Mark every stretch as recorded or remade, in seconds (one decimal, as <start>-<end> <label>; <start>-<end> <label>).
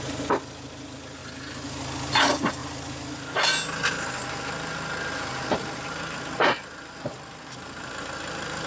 0.0-8.7 recorded